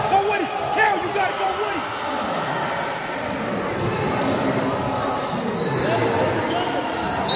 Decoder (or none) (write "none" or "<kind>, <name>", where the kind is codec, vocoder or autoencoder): none